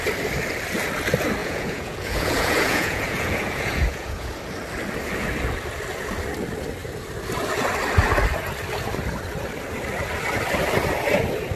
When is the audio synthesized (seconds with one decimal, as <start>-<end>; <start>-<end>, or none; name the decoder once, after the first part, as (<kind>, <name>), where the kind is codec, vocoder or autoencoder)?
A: 1.4-4.3 (vocoder, Vocos)